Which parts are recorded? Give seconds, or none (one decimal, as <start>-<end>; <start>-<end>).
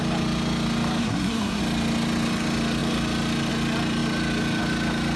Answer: 0.0-1.0; 1.6-5.2